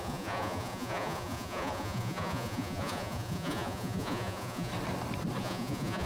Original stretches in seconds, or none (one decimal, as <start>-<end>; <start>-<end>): 4.7-5.4